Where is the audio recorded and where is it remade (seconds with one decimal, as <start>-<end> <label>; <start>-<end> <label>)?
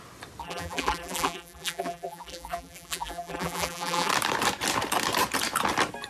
0.0-0.4 recorded; 0.4-4.1 remade; 4.1-6.1 recorded